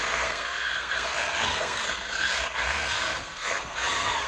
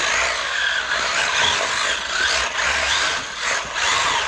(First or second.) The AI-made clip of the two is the first